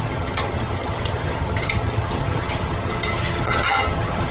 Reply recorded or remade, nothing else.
remade